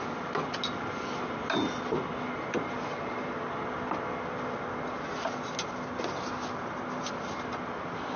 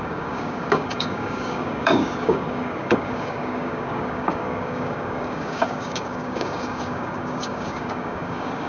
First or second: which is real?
first